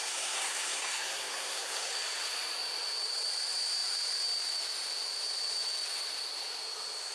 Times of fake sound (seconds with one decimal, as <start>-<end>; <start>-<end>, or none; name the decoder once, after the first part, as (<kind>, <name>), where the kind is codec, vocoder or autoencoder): 0.0-1.9 (codec, SNAC)